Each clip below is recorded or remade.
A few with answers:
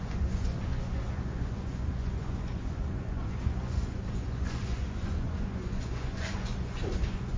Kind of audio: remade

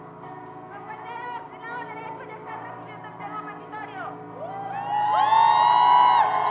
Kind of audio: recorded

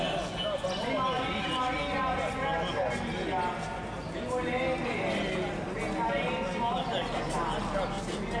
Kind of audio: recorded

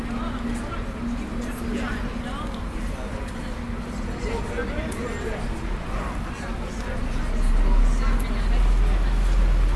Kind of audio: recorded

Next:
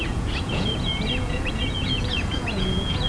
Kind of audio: remade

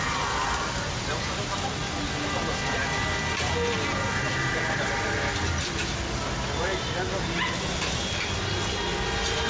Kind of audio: recorded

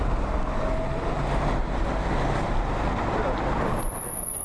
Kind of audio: recorded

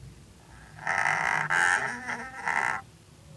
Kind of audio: recorded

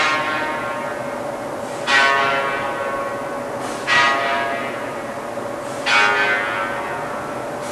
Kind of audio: recorded